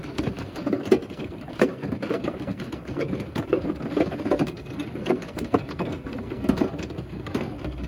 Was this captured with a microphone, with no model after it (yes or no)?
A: no